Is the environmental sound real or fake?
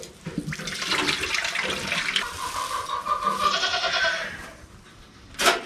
real